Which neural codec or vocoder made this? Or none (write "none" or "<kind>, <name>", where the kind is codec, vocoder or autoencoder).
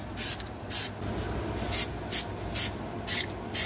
none